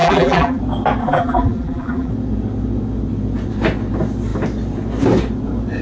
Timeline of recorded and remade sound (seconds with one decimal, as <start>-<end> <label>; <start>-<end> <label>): 0.0-0.6 remade; 0.6-1.0 recorded; 1.0-2.1 remade; 2.1-5.8 recorded